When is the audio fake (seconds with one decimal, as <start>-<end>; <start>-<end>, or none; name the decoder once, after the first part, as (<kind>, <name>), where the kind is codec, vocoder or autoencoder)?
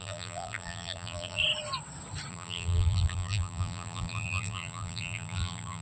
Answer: 0.0-1.4 (vocoder, BigVGAN v2); 2.3-5.8